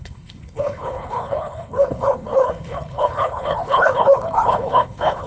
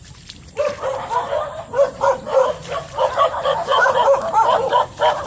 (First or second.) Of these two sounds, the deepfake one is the first